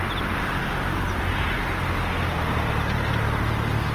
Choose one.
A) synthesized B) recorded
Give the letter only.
B